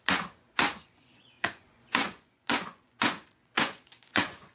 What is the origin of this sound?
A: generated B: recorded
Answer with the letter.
A